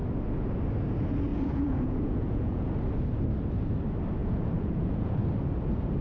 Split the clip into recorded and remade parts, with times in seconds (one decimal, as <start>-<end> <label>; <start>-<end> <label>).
0.0-1.3 recorded; 1.3-2.7 remade; 2.7-4.2 recorded; 4.2-5.2 remade; 5.2-6.0 recorded